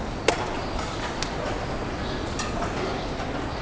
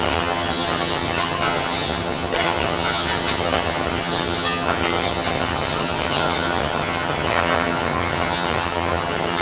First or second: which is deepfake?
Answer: second